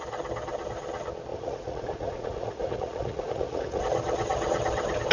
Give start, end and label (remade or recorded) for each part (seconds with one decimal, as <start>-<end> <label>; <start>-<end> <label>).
0.0-1.3 recorded; 1.3-3.8 remade; 3.8-5.1 recorded